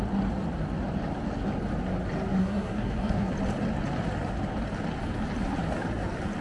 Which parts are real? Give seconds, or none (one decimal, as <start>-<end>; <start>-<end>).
0.0-2.4; 3.3-6.4